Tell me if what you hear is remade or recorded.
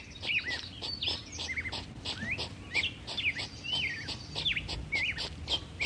recorded